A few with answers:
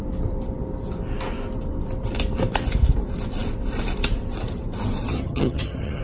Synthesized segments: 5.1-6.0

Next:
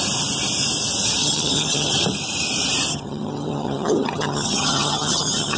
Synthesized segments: 1.2-1.9; 2.9-5.6

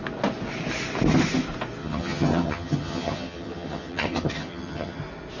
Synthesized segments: 1.8-5.0